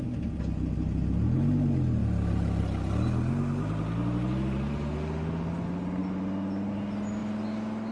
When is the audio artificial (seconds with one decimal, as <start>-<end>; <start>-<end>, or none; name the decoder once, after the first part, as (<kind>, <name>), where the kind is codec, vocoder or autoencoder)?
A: none